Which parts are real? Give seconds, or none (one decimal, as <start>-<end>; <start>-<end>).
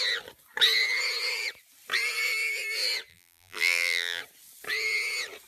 0.0-3.1; 4.2-5.5